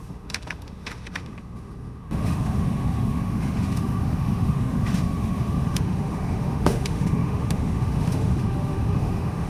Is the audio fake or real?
fake